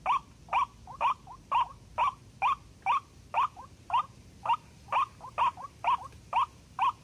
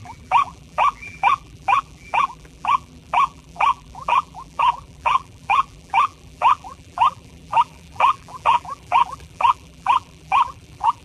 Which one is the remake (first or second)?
second